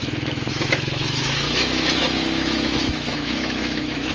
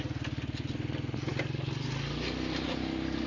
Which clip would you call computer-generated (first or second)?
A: first